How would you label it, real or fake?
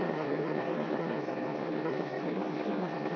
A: fake